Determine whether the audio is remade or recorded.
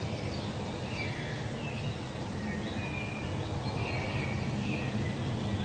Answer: recorded